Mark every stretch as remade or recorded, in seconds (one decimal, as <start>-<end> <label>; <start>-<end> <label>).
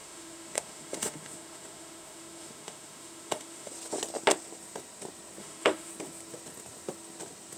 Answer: 0.0-3.7 remade; 3.7-5.4 recorded; 5.4-5.9 remade; 5.9-7.6 recorded